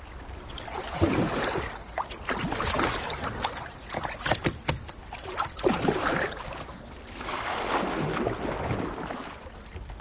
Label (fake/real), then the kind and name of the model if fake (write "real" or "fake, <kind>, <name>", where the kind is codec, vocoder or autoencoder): real